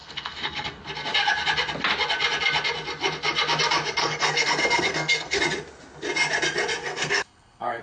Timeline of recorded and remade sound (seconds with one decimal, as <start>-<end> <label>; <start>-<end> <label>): 0.0-0.8 remade; 0.8-4.0 recorded; 4.0-5.4 remade; 5.4-6.8 recorded; 6.8-7.8 remade